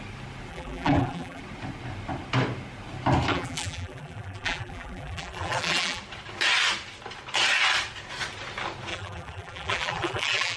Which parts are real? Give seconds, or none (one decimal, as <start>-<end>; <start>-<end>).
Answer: 0.0-0.5; 1.4-3.3; 6.0-8.9